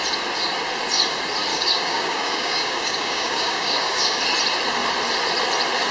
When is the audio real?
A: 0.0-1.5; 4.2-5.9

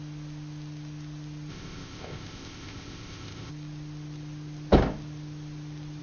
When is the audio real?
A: 0.0-1.5; 3.5-6.0

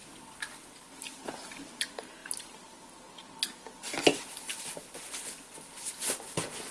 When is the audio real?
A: 0.0-6.7

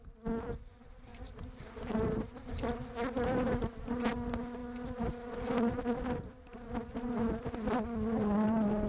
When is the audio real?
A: 0.0-1.1; 2.5-8.9